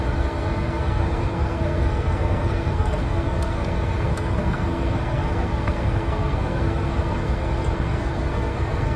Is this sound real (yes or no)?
no